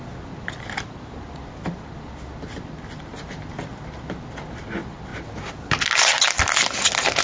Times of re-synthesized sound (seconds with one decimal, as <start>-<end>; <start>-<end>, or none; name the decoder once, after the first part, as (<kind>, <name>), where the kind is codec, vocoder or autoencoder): none